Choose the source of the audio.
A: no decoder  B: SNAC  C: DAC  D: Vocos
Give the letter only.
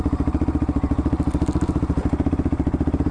A